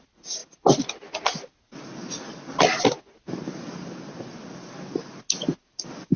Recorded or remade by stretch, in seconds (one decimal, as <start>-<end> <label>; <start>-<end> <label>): 0.0-6.2 recorded